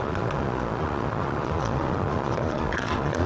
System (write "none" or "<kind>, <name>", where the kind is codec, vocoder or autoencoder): vocoder, Vocos